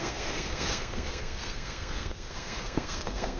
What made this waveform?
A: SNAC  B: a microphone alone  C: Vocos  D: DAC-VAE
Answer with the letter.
A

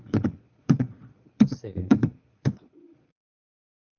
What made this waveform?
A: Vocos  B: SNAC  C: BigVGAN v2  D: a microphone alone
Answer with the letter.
A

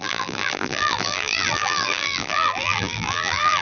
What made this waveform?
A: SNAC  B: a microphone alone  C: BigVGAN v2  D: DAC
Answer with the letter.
C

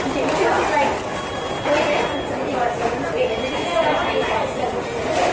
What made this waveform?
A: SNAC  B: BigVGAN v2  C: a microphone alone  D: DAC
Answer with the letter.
C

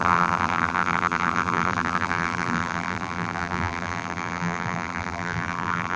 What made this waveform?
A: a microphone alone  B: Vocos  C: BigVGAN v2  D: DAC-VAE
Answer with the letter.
C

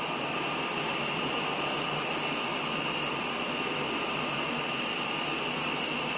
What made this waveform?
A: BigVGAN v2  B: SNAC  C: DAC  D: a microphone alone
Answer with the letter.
A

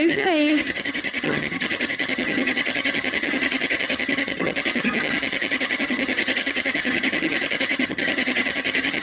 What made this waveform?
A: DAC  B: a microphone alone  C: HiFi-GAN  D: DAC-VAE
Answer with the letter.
C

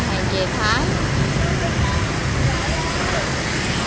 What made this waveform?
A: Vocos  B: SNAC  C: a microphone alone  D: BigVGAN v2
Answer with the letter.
C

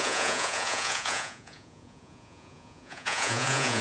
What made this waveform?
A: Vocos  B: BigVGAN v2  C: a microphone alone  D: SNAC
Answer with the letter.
A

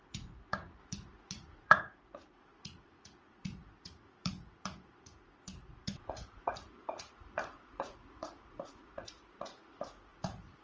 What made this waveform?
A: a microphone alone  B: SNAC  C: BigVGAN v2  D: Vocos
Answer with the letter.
D